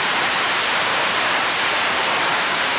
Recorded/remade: remade